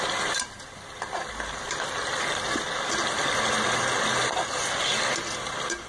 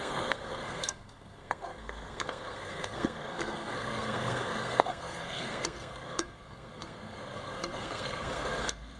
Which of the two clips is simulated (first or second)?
second